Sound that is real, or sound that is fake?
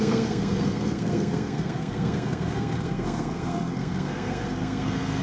fake